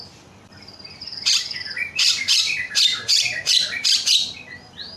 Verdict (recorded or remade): remade